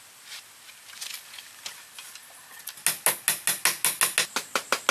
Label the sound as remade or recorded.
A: recorded